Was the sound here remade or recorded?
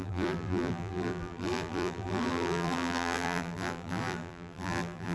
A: remade